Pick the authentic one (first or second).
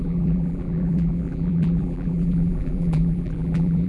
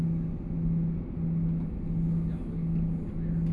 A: second